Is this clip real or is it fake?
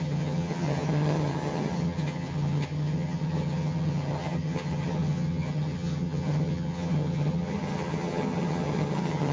fake